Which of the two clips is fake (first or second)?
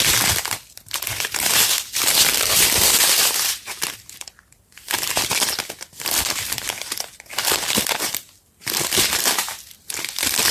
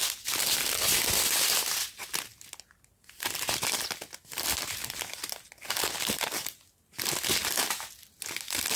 first